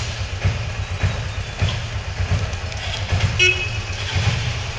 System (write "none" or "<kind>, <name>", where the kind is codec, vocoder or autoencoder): none